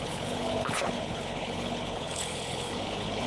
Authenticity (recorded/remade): remade